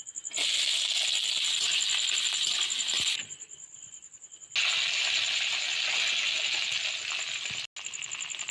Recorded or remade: recorded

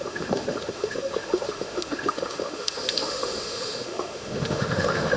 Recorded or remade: remade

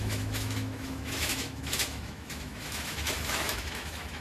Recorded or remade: remade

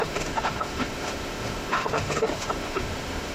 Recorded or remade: remade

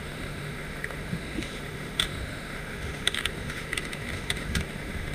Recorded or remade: remade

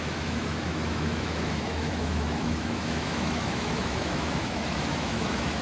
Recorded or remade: remade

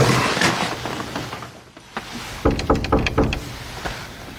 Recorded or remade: recorded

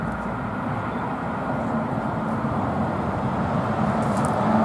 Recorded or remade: recorded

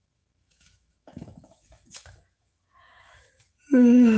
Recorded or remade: remade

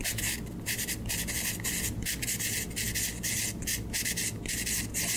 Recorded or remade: recorded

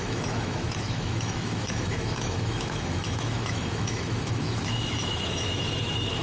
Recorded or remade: remade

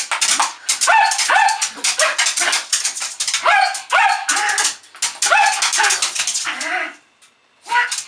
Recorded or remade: recorded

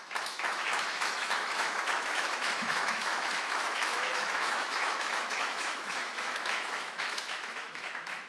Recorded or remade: remade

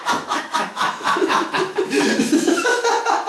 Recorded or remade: remade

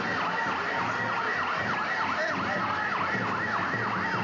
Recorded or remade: recorded